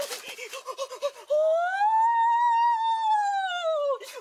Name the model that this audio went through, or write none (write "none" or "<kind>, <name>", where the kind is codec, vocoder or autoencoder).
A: none